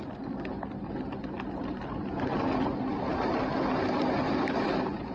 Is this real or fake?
real